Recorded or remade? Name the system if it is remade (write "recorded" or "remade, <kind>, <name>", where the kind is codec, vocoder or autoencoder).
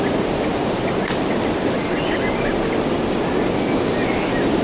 recorded